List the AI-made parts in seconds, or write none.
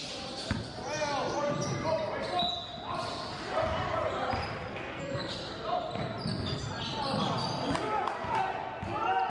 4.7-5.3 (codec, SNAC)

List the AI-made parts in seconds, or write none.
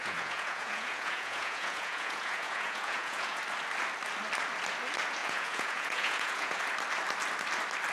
0.0-3.4 (vocoder, Vocos); 5.2-6.6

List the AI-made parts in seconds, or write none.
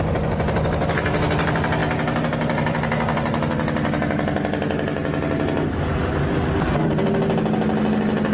none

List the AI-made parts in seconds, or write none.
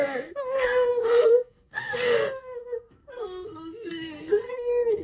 0.0-5.0 (codec, SNAC)